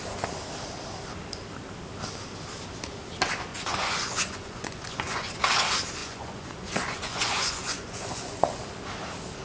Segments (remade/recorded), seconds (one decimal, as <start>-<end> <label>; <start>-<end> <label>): 0.0-3.5 recorded; 3.5-5.3 remade; 5.3-6.0 recorded; 6.0-8.6 remade; 8.6-9.4 recorded